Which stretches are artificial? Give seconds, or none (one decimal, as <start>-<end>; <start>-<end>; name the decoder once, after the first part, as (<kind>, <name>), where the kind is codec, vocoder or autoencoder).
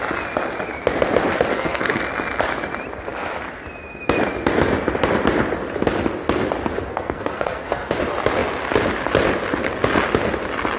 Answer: 1.5-2.0 (codec, SNAC); 6.9-8.0